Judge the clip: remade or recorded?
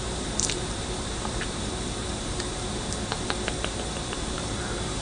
remade